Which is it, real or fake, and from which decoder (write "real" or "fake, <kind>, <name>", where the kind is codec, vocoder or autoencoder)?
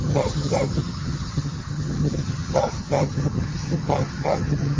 fake, vocoder, HiFi-GAN